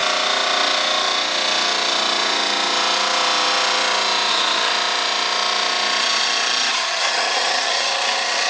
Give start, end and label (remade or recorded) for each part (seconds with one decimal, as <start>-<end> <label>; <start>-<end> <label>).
0.0-4.3 recorded; 4.3-4.7 remade; 4.7-6.0 recorded; 6.0-8.5 remade